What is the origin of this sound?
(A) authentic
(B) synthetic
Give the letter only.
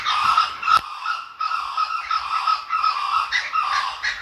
A